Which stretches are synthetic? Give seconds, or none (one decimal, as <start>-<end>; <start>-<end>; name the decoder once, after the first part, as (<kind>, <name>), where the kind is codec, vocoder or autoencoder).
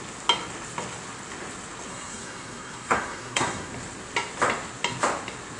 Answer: 1.9-3.7 (codec, SNAC)